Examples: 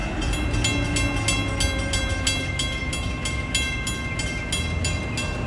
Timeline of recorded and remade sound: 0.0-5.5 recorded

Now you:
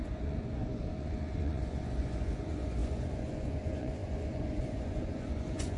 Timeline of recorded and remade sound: 0.0-5.8 remade

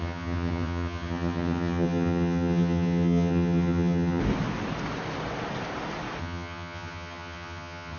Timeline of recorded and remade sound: 0.0-4.2 remade; 4.2-6.2 recorded; 6.2-8.0 remade

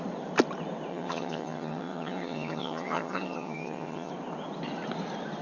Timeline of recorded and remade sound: 0.0-0.9 recorded; 0.9-4.1 remade; 4.1-5.4 recorded